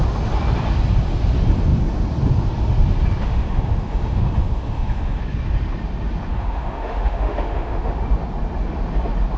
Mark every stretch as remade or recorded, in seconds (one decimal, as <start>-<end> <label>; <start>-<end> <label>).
0.0-3.2 recorded; 3.2-5.2 remade; 5.2-6.3 recorded; 6.3-8.0 remade; 8.0-9.4 recorded